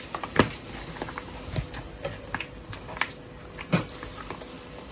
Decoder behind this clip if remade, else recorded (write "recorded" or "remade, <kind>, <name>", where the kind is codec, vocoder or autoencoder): recorded